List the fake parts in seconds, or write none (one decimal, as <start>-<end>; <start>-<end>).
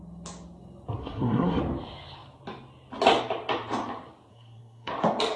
1.0-1.6; 4.3-4.9